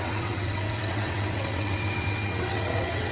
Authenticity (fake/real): fake